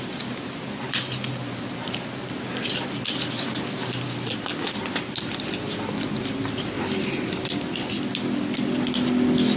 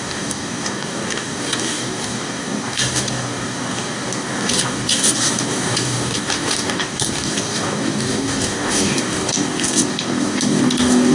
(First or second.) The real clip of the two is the first